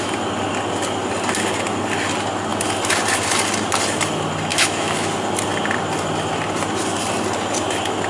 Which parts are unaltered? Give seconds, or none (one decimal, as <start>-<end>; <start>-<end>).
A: 0.0-4.5; 5.1-8.1